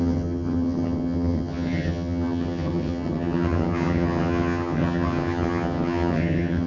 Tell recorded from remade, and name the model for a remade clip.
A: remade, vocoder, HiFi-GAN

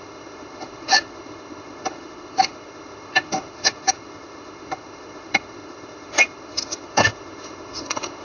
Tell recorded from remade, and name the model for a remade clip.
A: remade, autoencoder, DAC-VAE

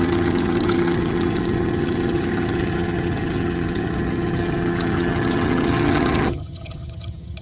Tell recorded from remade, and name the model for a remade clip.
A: remade, vocoder, HiFi-GAN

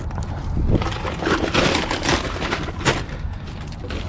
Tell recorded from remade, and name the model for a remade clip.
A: recorded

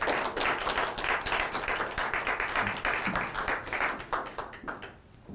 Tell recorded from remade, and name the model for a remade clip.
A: recorded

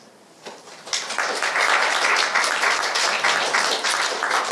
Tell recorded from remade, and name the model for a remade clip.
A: recorded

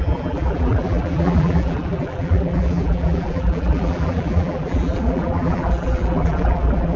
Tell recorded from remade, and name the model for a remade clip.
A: remade, vocoder, BigVGAN v2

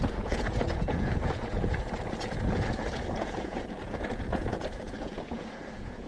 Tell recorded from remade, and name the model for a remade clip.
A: remade, vocoder, Vocos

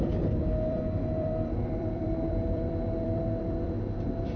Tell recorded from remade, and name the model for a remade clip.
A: remade, vocoder, BigVGAN v2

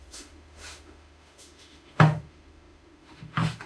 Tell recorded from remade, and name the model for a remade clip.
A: remade, autoencoder, DAC-VAE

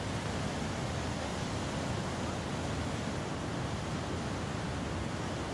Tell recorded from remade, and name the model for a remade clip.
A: recorded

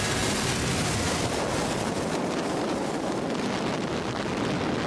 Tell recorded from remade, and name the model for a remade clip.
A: recorded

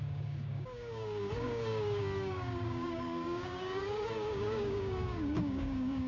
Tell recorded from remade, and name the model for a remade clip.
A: remade, codec, DAC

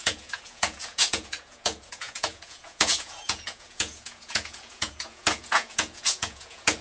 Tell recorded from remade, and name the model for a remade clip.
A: remade, vocoder, Vocos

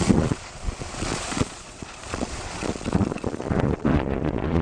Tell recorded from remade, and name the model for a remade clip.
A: remade, vocoder, Vocos